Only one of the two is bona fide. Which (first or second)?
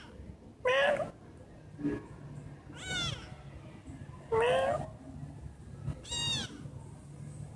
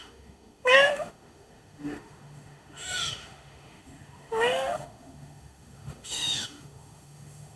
first